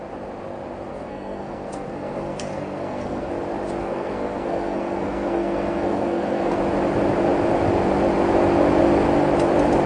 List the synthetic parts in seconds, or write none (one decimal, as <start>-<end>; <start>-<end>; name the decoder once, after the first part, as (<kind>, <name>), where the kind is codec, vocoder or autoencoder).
0.9-3.3 (codec, SNAC); 3.8-6.6